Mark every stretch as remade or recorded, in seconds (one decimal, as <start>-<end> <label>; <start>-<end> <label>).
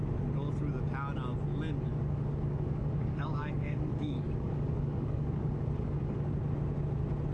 0.0-1.9 recorded; 1.9-6.3 remade; 6.3-7.3 recorded